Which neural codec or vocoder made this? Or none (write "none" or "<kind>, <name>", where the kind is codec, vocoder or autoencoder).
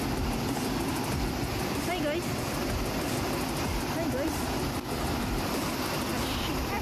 vocoder, BigVGAN v2